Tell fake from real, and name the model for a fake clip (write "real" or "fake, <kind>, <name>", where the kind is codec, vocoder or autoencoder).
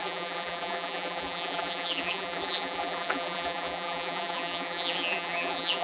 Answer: fake, vocoder, BigVGAN v2